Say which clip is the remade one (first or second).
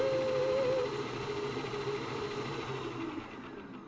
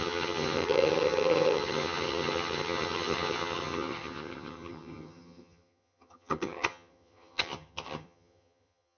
second